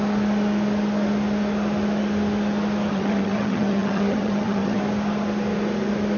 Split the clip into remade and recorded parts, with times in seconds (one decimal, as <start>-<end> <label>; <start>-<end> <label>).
0.0-2.9 recorded; 2.9-4.8 remade; 4.8-6.2 recorded